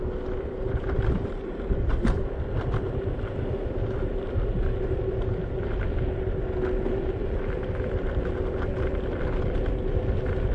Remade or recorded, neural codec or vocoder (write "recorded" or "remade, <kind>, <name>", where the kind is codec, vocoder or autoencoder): recorded